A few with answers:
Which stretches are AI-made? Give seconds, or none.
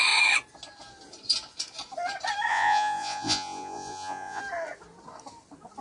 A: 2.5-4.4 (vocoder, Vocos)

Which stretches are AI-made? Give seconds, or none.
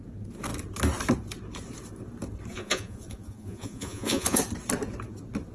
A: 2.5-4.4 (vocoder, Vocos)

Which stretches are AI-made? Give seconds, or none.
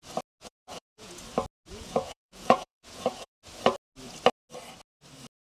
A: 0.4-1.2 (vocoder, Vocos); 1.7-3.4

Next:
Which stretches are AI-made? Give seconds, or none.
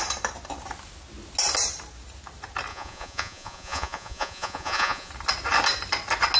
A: 2.7-5.1 (vocoder, Vocos)